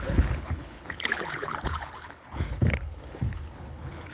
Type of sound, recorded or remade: remade